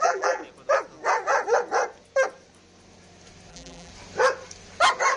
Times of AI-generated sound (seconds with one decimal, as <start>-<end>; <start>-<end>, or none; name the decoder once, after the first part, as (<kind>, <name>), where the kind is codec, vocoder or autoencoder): 0.0-0.4 (vocoder, BigVGAN v2); 3.5-3.9